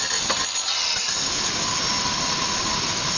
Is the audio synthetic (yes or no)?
no